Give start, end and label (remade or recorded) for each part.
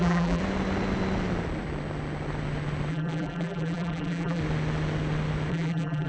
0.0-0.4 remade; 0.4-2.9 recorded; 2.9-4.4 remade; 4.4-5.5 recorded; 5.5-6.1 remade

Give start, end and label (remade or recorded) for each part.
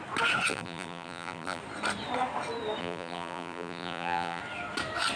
0.0-0.5 recorded; 0.5-1.6 remade; 1.6-2.8 recorded; 2.8-4.4 remade; 4.4-5.2 recorded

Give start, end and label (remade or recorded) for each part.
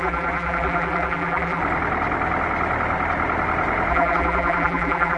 0.0-1.6 remade; 1.6-3.9 recorded; 3.9-5.2 remade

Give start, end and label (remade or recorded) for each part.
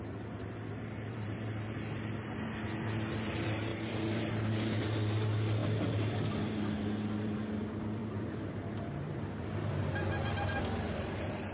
0.0-3.7 recorded; 3.7-4.7 remade; 4.7-8.0 recorded; 8.0-9.9 remade; 9.9-11.5 recorded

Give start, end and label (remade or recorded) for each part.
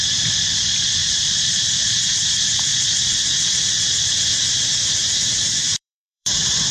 0.0-1.0 recorded; 1.0-1.7 remade; 1.7-5.0 recorded; 5.0-6.7 remade